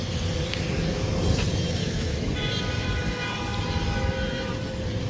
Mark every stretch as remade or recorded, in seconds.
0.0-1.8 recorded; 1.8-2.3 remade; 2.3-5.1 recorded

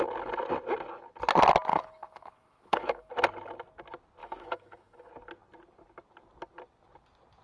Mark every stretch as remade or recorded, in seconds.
0.0-1.7 recorded; 1.7-3.1 remade; 3.1-4.2 recorded; 4.2-5.1 remade; 5.1-7.4 recorded

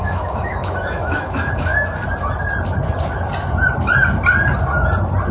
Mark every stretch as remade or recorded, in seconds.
0.0-1.7 remade; 1.7-5.3 recorded

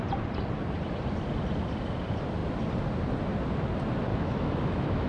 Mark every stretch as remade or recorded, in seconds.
0.0-4.1 recorded; 4.1-5.1 remade

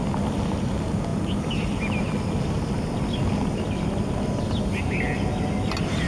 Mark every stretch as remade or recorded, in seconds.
0.0-6.1 recorded

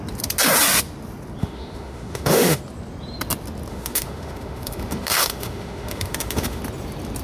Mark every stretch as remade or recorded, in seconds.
0.0-1.4 recorded; 1.4-2.6 remade; 2.6-3.7 recorded; 3.7-6.6 remade; 6.6-7.2 recorded